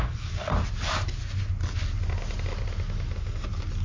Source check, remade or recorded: recorded